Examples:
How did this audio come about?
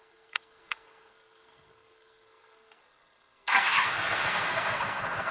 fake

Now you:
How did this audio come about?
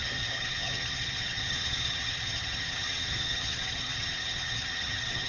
fake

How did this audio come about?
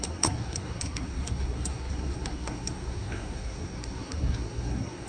fake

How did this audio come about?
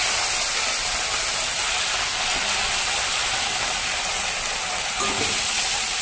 real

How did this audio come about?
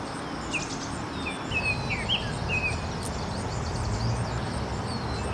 real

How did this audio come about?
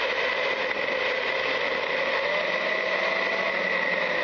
real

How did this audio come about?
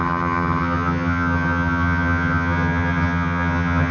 fake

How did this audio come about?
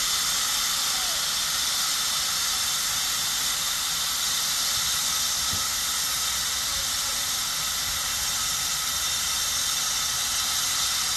real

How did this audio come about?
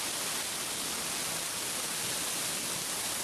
real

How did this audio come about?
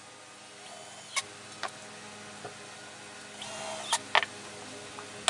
real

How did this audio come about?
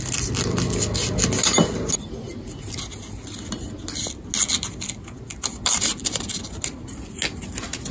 real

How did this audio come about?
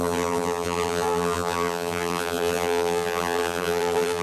fake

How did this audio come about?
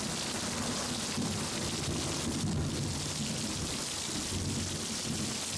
real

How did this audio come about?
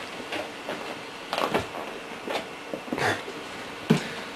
real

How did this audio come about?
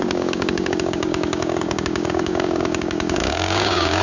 fake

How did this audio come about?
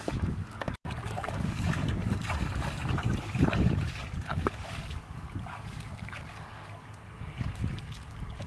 fake